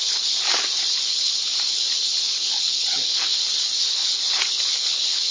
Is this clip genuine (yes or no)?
no